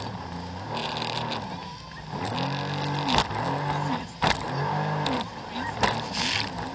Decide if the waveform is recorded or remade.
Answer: recorded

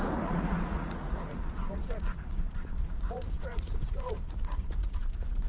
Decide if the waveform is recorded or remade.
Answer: remade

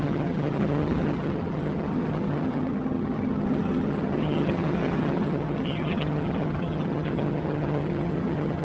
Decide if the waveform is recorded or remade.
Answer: remade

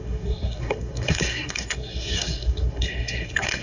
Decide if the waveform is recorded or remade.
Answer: remade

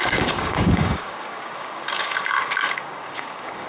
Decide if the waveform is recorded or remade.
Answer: remade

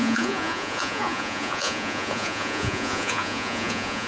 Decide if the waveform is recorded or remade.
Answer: remade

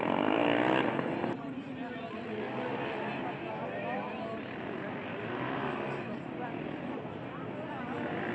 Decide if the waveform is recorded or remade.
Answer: recorded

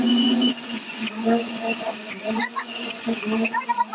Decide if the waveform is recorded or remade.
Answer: remade